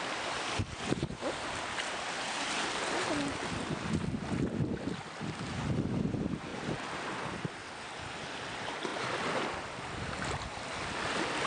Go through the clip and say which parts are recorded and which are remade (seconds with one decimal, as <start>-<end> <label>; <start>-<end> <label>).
0.0-11.5 recorded